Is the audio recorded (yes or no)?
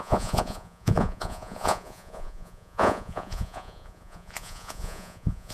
no